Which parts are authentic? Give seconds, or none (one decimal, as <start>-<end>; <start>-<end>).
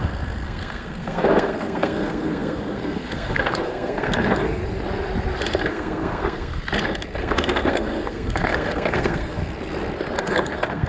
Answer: 4.6-5.7; 6.6-7.2; 9.4-10.2